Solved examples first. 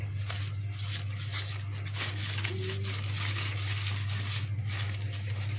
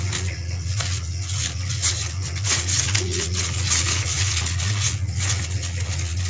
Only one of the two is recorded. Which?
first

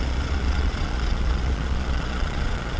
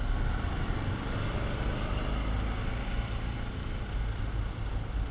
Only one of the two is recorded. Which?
second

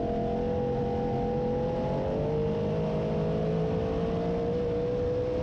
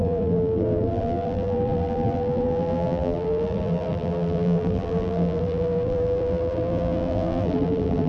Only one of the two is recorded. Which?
first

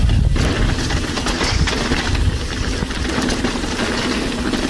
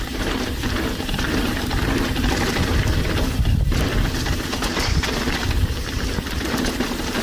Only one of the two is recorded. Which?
first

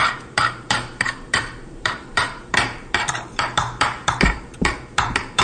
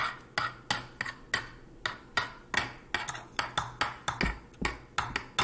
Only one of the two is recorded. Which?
second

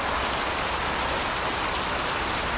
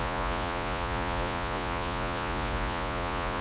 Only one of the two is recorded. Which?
first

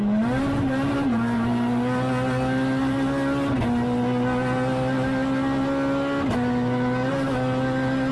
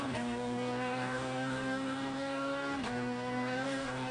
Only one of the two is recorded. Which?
first